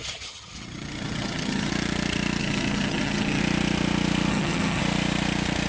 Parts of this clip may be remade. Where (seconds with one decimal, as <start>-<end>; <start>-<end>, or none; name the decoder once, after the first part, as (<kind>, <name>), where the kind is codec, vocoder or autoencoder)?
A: 0.0-1.7 (vocoder, HiFi-GAN); 2.4-3.4; 4.3-4.8

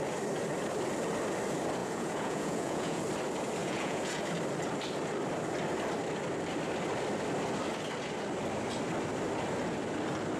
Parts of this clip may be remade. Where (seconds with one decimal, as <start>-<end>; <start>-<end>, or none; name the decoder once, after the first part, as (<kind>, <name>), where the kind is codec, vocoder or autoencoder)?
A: 1.8-3.0 (vocoder, Vocos); 3.6-4.2

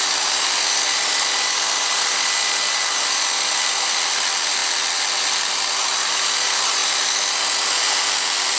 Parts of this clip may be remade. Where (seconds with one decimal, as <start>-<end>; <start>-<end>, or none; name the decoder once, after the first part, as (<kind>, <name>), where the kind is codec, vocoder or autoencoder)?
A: none

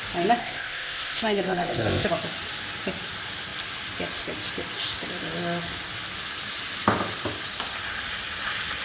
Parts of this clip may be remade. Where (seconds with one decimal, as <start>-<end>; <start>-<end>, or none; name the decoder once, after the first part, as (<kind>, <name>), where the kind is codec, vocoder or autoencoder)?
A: 0.4-2.1 (codec, ZipCodec)

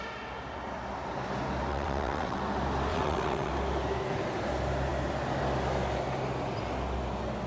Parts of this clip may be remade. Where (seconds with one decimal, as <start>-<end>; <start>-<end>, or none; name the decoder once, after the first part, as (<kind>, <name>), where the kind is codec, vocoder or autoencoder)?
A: 1.7-2.4 (vocoder, WaveNeXt); 2.9-3.5

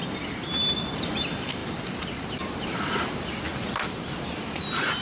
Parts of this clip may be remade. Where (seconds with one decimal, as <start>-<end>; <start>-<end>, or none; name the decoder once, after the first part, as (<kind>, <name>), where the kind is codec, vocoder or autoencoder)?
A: none

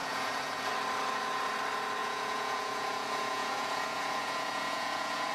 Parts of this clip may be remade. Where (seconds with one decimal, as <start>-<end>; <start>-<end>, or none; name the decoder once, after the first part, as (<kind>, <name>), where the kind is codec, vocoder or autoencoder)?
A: 0.0-0.7 (vocoder, Vocos); 2.0-5.3

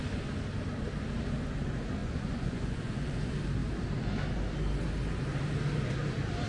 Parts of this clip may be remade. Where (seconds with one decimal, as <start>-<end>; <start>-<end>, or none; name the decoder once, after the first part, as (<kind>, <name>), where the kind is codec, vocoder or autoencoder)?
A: 2.0-3.2 (vocoder, Vocos)